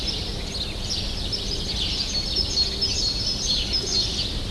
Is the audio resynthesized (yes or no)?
no